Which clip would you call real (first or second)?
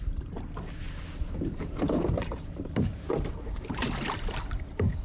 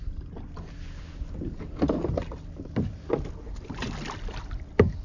second